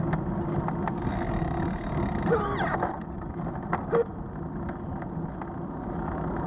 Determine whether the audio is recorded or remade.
recorded